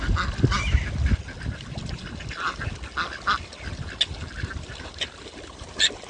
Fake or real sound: real